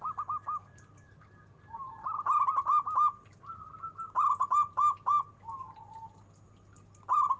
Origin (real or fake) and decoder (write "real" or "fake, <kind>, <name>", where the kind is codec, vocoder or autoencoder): real